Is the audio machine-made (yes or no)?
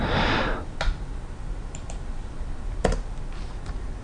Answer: no